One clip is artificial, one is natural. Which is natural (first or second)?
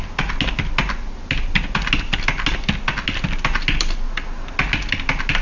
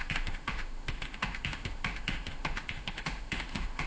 first